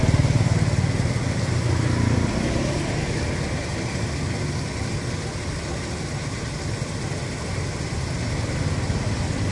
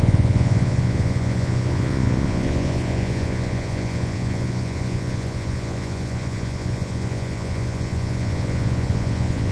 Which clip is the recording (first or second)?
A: first